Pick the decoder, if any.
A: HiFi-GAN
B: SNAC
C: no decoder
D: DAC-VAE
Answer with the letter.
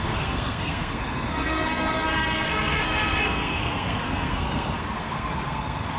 B